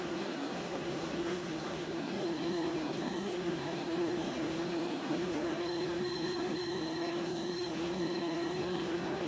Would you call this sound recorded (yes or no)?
no